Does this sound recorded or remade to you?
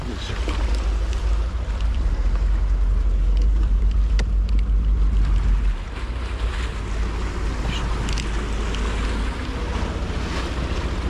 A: recorded